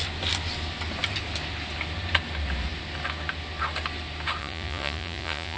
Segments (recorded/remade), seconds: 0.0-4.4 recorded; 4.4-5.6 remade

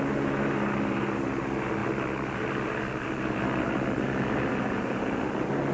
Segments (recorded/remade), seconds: 0.0-5.7 recorded

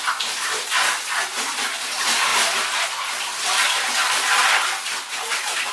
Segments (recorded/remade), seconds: 0.0-5.7 recorded